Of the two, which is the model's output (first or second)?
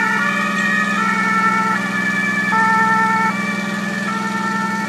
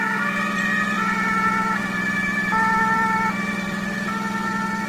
second